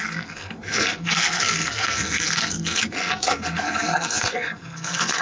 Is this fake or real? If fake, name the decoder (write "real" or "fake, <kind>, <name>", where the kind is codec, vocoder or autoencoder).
fake, codec, SNAC